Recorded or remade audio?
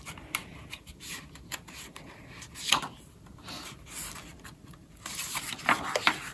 remade